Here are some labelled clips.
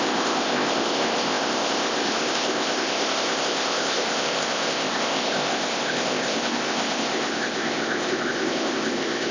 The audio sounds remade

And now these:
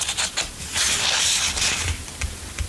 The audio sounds recorded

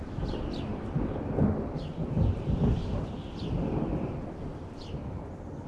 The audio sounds remade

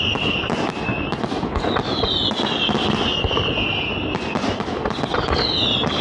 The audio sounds recorded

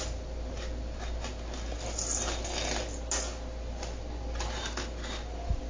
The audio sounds recorded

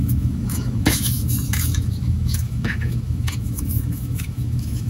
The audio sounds remade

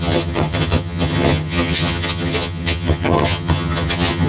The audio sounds remade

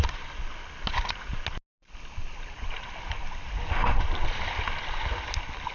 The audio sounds recorded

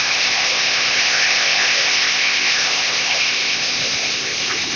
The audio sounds remade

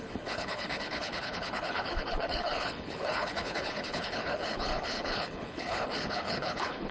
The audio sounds remade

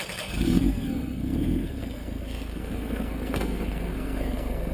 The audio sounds remade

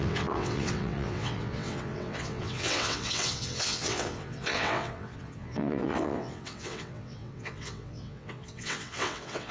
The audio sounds remade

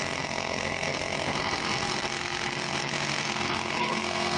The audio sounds remade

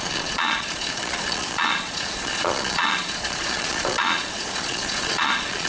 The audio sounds remade